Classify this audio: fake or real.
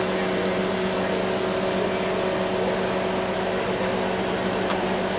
real